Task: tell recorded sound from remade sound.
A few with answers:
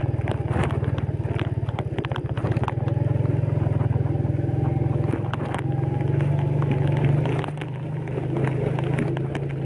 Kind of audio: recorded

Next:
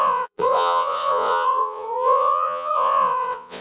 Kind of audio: remade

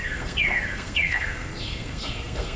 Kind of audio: remade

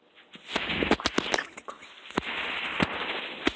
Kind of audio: recorded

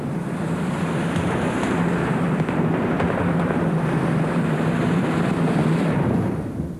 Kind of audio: remade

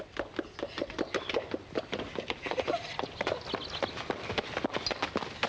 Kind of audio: recorded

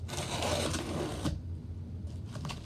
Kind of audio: recorded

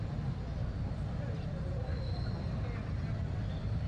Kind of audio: recorded